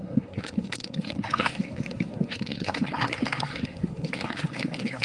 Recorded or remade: remade